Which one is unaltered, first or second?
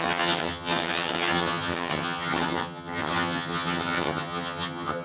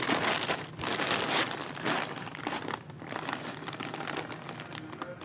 second